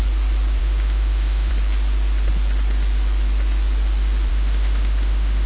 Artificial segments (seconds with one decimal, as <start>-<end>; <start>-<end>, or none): 0.6-1.5; 4.3-5.5